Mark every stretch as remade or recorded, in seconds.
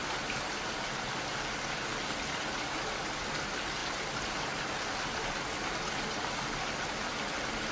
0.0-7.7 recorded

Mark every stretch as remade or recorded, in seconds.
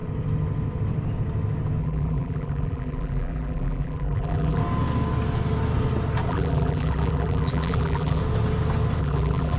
0.0-1.8 recorded; 1.8-4.6 remade; 4.6-6.3 recorded; 6.3-8.2 remade; 8.2-9.0 recorded; 9.0-9.6 remade